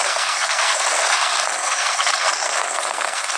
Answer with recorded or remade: remade